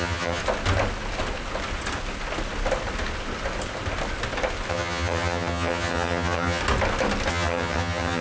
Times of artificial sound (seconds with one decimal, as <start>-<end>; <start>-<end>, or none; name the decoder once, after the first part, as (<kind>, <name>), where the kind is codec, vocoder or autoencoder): 0.0-0.4 (vocoder, HiFi-GAN); 4.7-6.6; 7.3-8.2